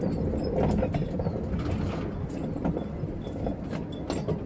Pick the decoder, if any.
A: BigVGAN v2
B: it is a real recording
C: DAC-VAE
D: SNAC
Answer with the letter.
B